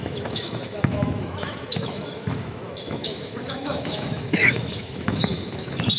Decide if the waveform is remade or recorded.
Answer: remade